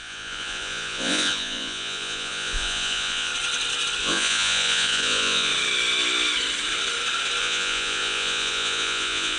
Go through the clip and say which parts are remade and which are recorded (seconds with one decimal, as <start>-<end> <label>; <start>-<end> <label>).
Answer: 0.0-3.3 remade; 3.3-4.0 recorded; 4.0-5.5 remade; 5.5-7.4 recorded; 7.4-9.4 remade

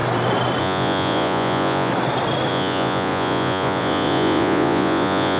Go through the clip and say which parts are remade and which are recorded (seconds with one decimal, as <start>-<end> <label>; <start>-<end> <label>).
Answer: 0.0-0.6 recorded; 0.6-1.9 remade; 1.9-2.5 recorded; 2.5-5.4 remade

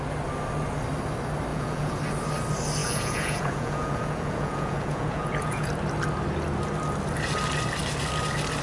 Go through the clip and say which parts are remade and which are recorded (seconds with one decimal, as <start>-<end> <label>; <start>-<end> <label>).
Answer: 0.0-1.5 recorded; 1.5-2.0 remade; 2.0-2.8 recorded; 2.8-5.7 remade; 5.7-8.6 recorded

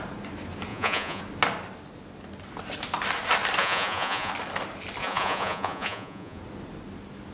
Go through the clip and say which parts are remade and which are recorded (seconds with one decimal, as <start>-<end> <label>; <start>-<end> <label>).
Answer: 0.0-0.7 recorded; 0.7-1.2 remade; 1.2-3.6 recorded; 3.6-4.3 remade; 4.3-5.0 recorded; 5.0-6.4 remade; 6.4-7.3 recorded

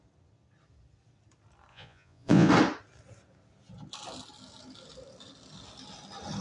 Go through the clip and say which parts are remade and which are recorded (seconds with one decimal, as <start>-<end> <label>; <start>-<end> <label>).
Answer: 0.0-1.7 recorded; 1.7-2.5 remade; 2.5-6.4 recorded